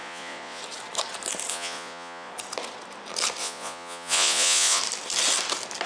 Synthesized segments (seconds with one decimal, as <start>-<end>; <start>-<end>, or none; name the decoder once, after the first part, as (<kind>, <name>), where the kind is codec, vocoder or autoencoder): 0.0-0.6 (vocoder, Vocos); 1.5-2.3; 3.4-4.8